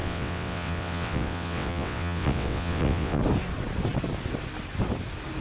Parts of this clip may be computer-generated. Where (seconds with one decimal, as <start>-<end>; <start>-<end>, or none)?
0.0-3.2